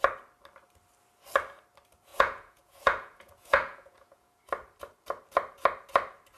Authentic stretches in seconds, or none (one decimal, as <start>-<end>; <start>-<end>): 0.0-2.1; 4.4-6.4